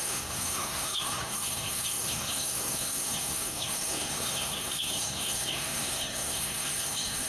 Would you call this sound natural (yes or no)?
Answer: no